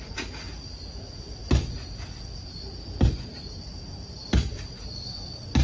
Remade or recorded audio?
recorded